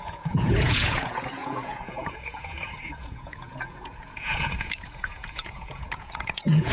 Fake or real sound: fake